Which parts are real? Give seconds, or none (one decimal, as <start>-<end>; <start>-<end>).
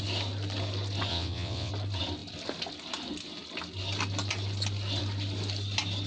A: 0.0-1.1; 1.7-6.1